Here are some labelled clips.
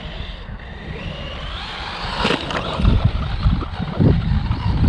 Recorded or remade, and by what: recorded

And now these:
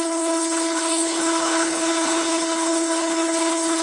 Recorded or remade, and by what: remade, codec, HILCodec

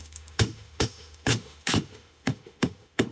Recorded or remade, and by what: remade, autoencoder, DAC-VAE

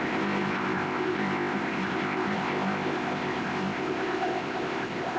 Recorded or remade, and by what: remade, codec, ZipCodec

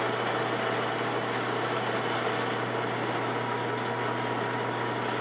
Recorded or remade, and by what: recorded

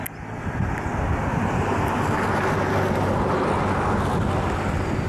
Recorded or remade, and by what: recorded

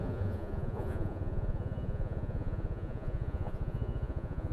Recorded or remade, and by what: remade, vocoder, Vocos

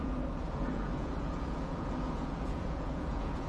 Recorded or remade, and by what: remade, vocoder, Vocos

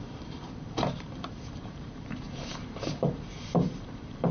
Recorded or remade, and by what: remade, vocoder, BigVGAN v2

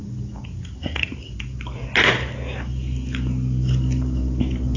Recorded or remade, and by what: recorded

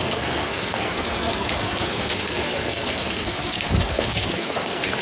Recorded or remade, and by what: remade, codec, SNAC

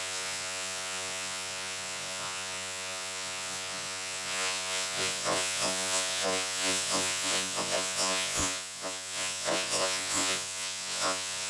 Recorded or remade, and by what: remade, vocoder, Vocos